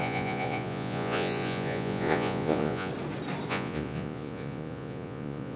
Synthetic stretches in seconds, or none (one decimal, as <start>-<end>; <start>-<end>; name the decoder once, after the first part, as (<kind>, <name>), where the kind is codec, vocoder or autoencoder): 0.0-2.9 (vocoder, Vocos); 3.5-5.6